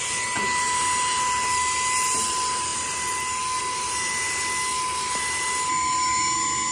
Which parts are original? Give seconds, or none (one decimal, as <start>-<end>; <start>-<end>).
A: 0.0-6.7